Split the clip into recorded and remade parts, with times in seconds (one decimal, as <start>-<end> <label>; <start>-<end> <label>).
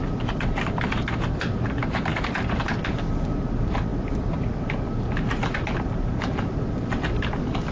0.0-7.7 recorded